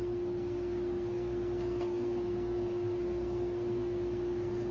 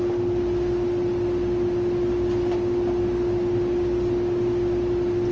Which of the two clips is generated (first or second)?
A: first